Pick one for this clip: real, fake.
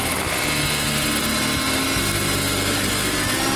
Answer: real